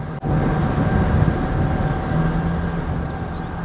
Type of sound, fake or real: real